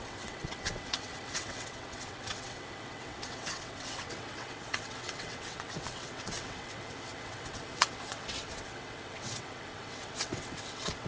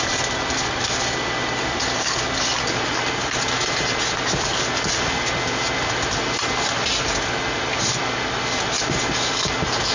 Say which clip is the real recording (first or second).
second